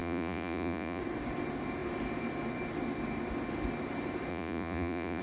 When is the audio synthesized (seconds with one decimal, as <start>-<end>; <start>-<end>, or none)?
0.0-1.0; 4.3-5.2